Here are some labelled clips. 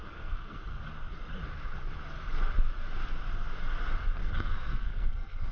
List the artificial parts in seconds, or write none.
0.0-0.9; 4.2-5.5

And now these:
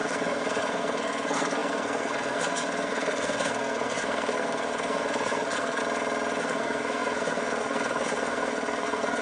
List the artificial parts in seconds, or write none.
0.0-5.8; 6.4-9.2

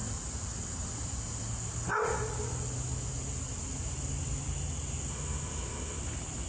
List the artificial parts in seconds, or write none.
5.1-6.0

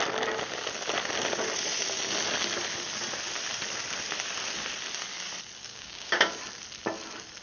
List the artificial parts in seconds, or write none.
5.7-6.4